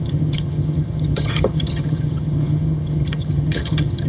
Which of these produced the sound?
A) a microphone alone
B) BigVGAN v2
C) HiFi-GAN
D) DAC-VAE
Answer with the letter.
C